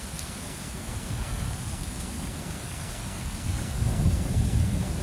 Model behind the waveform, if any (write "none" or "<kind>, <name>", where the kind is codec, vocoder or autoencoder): codec, SNAC